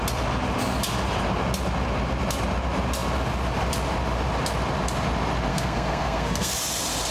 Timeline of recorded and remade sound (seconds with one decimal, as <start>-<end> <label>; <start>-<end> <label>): 0.0-5.5 recorded; 5.5-6.5 remade; 6.5-7.1 recorded